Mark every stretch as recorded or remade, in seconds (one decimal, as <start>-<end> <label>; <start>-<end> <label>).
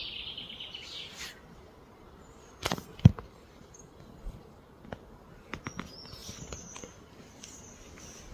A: 0.0-8.3 recorded